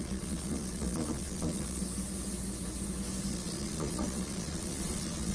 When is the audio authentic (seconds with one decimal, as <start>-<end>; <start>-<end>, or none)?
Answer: 1.8-3.3